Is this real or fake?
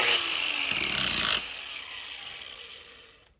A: real